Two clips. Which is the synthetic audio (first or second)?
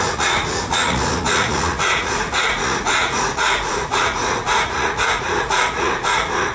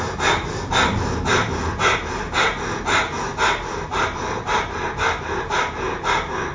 first